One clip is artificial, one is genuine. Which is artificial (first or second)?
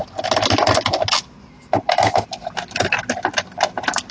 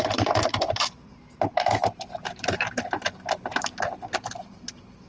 second